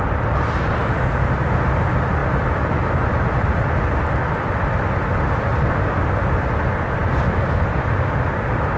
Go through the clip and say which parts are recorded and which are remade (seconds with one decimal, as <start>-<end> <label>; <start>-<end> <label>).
0.0-8.8 recorded

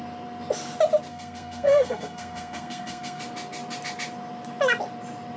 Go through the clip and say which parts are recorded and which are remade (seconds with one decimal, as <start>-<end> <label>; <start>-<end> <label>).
0.0-1.1 recorded; 1.1-3.2 remade; 3.2-5.4 recorded